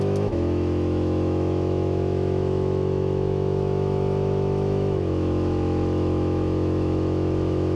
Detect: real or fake fake